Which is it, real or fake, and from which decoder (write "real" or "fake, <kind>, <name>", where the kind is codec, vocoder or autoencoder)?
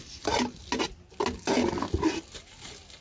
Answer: real